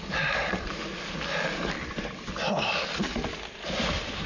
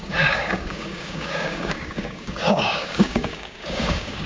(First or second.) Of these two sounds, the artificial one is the second